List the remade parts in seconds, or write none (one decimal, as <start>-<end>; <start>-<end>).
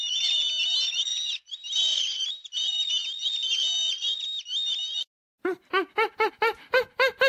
1.1-2.9